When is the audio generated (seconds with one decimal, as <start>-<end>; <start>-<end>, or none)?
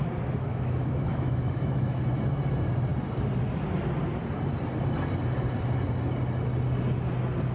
0.5-2.0